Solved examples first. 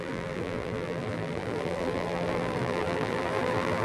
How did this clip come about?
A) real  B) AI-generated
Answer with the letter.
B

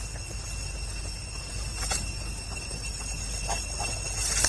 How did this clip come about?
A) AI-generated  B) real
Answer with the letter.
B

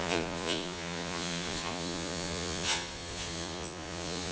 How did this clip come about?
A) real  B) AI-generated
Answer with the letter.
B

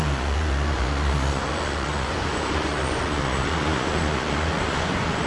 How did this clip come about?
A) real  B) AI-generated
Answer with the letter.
B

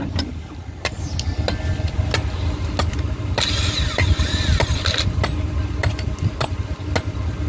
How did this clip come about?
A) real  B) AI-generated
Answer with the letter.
A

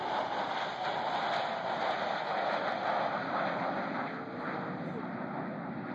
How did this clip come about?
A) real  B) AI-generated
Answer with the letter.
A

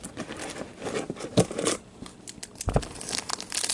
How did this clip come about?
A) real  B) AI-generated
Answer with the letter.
A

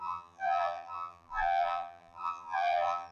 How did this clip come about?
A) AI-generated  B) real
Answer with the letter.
A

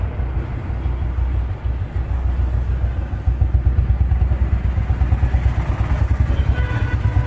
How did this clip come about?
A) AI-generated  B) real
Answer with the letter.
B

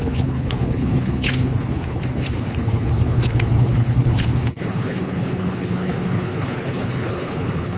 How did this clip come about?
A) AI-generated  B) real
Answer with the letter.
A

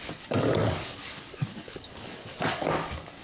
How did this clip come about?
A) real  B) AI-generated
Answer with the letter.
B